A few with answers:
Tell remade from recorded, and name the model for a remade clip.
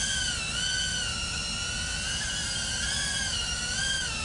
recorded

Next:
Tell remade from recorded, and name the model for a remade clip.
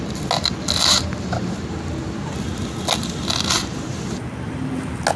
recorded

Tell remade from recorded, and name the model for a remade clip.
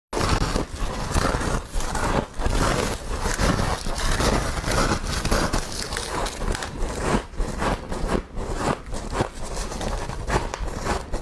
recorded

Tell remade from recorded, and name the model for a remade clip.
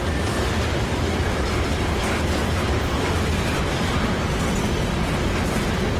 recorded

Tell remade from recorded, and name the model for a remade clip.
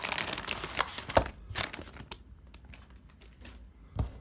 recorded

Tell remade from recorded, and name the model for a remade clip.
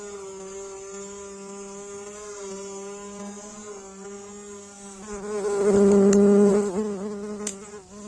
recorded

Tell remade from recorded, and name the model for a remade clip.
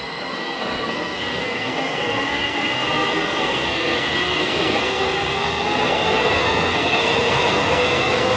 remade, codec, SNAC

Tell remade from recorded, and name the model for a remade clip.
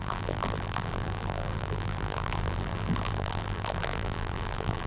remade, vocoder, BigVGAN v2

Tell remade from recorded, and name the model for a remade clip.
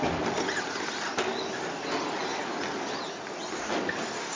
recorded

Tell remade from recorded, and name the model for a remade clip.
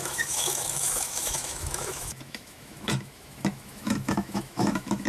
remade, autoencoder, DAC-VAE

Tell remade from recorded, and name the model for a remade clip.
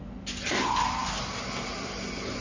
recorded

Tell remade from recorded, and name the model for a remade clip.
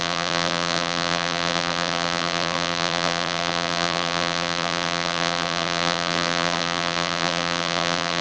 remade, vocoder, BigVGAN v2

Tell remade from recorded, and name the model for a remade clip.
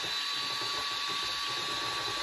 recorded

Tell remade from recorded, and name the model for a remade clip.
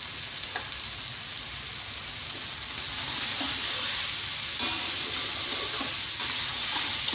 recorded